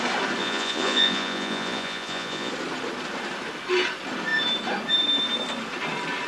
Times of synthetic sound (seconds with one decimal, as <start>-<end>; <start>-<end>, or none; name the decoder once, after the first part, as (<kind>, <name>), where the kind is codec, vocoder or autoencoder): 0.4-2.5 (vocoder, Vocos)